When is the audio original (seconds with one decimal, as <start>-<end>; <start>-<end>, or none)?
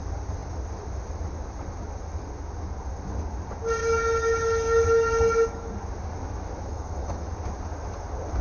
0.0-3.8; 5.7-6.7; 7.3-8.4